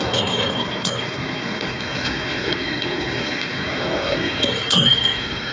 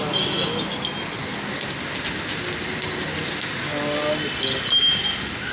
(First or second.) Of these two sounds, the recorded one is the second